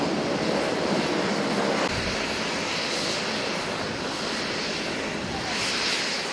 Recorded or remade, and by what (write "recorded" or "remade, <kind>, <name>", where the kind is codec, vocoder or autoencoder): recorded